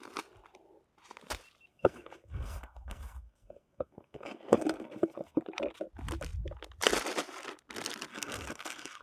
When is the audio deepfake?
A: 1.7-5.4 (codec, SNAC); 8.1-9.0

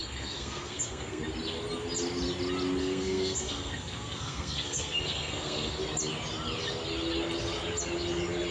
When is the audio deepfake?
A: 0.0-1.2 (codec, SNAC); 2.8-5.8